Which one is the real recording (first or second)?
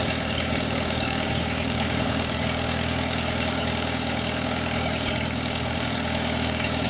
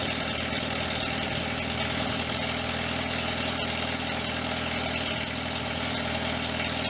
second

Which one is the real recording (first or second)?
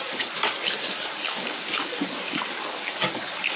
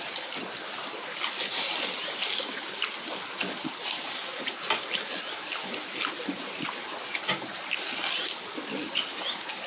second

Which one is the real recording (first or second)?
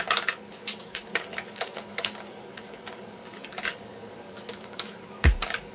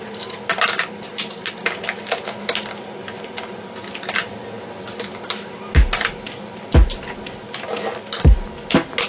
second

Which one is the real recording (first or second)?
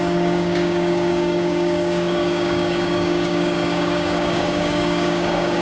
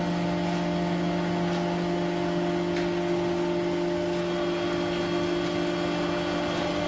second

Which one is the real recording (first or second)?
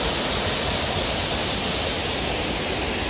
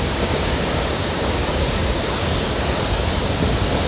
first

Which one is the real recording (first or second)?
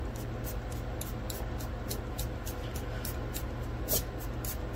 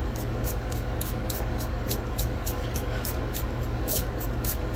first